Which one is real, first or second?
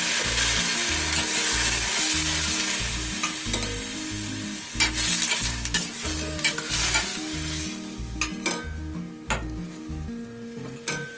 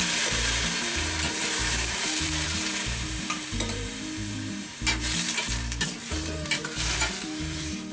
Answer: first